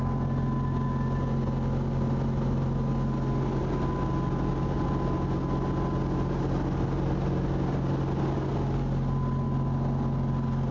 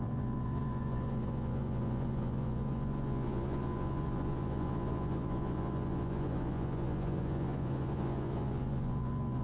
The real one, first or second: first